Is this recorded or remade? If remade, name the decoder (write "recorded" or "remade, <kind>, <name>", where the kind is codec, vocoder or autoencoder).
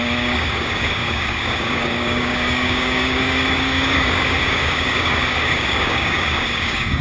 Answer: remade, codec, DAC